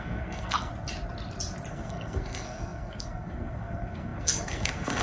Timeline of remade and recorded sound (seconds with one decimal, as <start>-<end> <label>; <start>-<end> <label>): 0.0-0.7 remade; 0.7-1.7 recorded; 1.7-5.0 remade